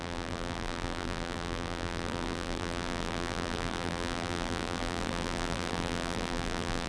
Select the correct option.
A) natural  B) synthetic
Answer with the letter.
B